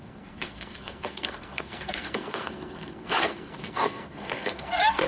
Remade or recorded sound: remade